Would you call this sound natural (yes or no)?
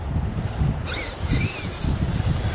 yes